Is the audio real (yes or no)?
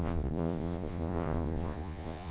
no